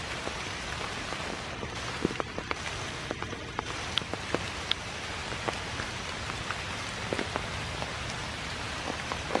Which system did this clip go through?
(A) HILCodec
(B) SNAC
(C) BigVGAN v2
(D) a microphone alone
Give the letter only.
D